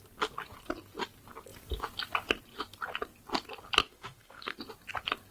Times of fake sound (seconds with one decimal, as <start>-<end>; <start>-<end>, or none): 3.8-4.6